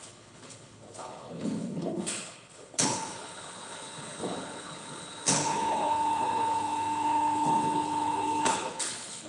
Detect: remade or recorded remade